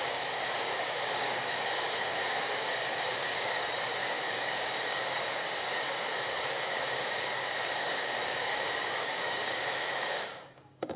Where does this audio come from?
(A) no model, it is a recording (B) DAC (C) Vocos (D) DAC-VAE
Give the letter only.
B